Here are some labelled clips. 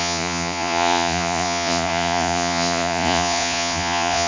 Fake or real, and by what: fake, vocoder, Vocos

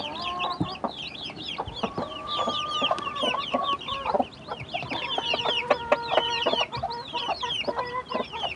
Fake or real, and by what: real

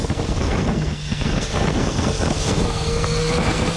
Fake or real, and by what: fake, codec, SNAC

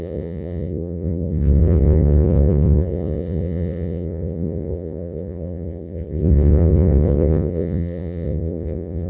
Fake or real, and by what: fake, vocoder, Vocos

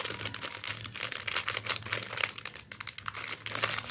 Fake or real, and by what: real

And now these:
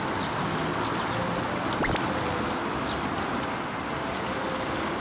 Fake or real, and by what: real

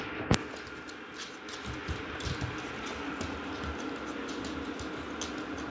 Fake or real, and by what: real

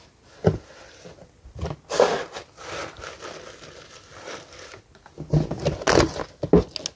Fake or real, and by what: real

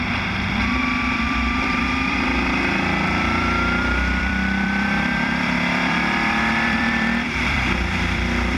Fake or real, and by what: fake, vocoder, BigVGAN v2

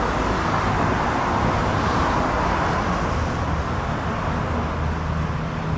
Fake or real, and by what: real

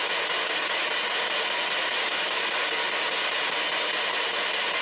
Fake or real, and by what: real